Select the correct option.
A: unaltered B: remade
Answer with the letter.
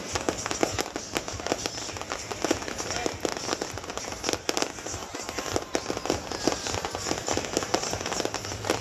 A